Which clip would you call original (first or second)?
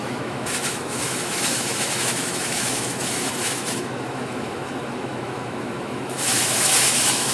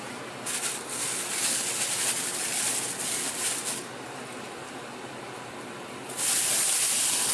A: second